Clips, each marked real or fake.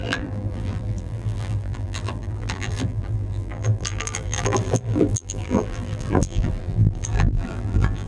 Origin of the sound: fake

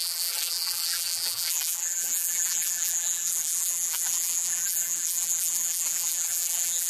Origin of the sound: fake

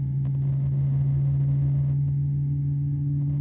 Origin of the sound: real